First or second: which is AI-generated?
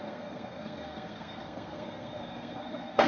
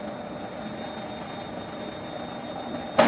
first